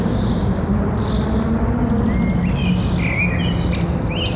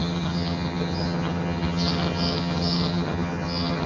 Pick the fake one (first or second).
second